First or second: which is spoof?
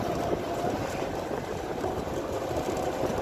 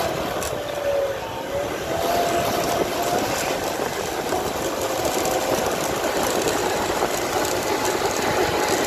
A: first